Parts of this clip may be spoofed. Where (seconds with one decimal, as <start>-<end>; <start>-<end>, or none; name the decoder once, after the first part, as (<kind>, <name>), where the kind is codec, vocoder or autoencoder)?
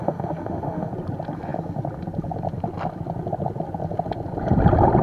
0.0-0.9 (autoencoder, DAC-VAE)